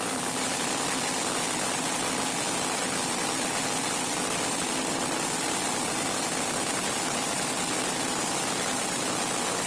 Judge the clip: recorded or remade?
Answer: recorded